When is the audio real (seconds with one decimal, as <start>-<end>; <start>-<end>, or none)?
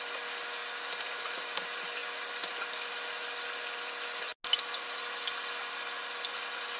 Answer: 0.0-6.8